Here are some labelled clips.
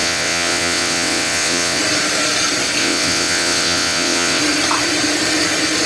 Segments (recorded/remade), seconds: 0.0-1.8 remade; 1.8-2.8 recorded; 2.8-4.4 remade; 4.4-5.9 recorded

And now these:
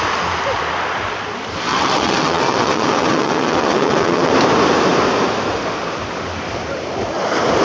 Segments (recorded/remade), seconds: 0.0-1.7 recorded; 1.7-4.3 remade; 4.3-7.6 recorded

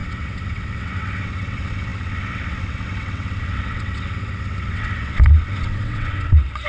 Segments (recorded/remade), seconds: 0.0-6.7 remade

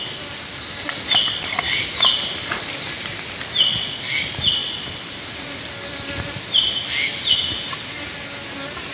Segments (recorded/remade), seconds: 0.0-8.9 recorded

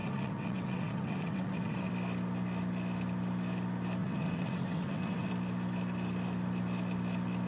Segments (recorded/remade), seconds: 0.0-1.9 remade; 1.9-4.0 recorded; 4.0-5.3 remade; 5.3-7.5 recorded

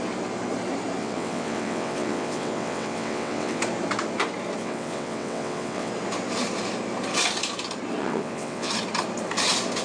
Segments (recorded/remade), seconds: 0.0-1.0 recorded; 1.0-3.6 remade; 3.6-4.6 recorded; 4.6-5.9 remade; 5.9-8.0 recorded; 8.0-8.7 remade; 8.7-9.8 recorded

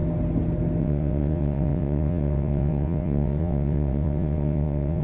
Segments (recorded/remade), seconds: 0.0-0.8 recorded; 0.8-5.0 remade